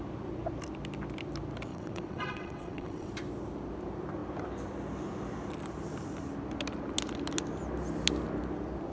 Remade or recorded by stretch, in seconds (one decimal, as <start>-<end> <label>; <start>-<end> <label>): 0.0-1.7 recorded; 1.7-3.1 remade; 3.1-8.9 recorded